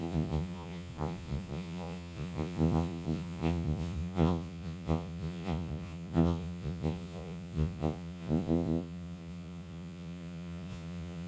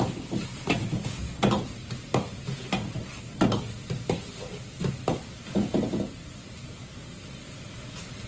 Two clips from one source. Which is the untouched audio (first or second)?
second